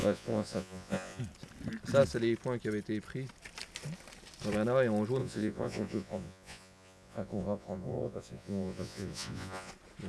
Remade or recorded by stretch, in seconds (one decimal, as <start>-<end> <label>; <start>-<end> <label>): 0.0-1.2 remade; 1.2-5.2 recorded; 5.2-9.7 remade; 9.7-10.1 recorded